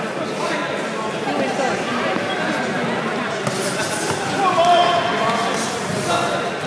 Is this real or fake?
real